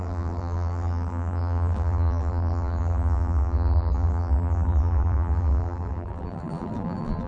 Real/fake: fake